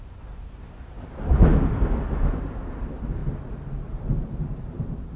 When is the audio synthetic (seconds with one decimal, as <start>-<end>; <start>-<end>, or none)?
0.0-1.5; 2.1-3.2; 4.0-5.2